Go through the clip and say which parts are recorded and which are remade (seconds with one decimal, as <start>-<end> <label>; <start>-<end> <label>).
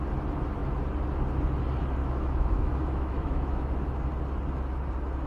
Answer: 0.0-2.0 recorded; 2.0-3.7 remade; 3.7-5.3 recorded